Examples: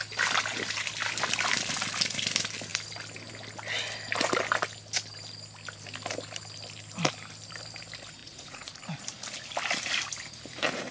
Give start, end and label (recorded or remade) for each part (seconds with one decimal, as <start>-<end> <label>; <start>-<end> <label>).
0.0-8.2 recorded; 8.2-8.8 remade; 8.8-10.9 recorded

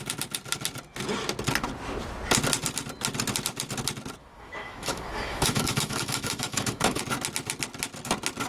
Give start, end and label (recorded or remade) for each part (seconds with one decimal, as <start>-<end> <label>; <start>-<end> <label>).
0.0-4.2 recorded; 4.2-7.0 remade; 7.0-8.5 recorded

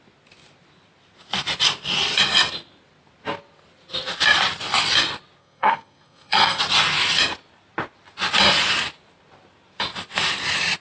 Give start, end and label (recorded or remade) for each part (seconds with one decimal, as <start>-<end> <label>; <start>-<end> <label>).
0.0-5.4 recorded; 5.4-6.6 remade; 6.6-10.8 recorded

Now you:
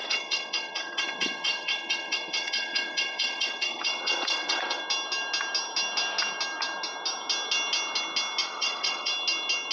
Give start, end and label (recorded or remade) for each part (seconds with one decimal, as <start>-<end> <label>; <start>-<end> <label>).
0.0-4.8 remade; 4.8-8.4 recorded; 8.4-9.1 remade; 9.1-9.7 recorded